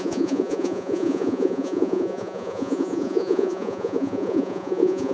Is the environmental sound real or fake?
fake